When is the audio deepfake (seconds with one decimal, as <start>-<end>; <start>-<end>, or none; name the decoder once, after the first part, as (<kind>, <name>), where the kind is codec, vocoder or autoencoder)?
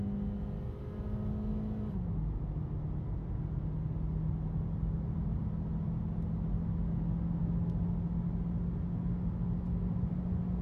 none